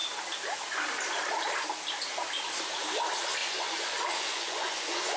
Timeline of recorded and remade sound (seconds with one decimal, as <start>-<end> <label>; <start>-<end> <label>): 0.0-3.4 recorded; 3.4-5.2 remade